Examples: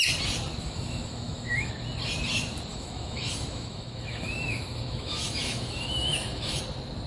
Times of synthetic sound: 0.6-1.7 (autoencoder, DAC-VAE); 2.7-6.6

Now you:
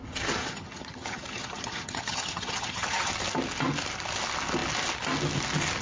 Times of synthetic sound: 0.4-3.1 (vocoder, HiFi-GAN)

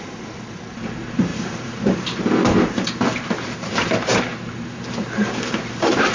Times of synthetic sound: 0.0-4.3 (vocoder, BigVGAN v2); 5.5-6.1

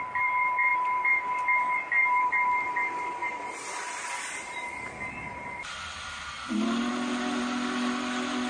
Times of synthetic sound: 0.0-3.2 (vocoder, BigVGAN v2)